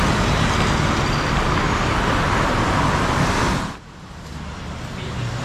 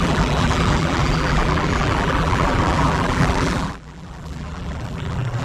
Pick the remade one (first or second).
second